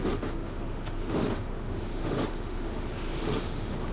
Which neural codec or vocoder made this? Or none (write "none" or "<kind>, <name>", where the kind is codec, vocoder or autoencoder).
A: autoencoder, DAC-VAE